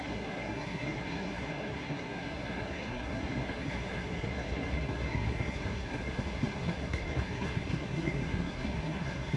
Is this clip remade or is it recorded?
remade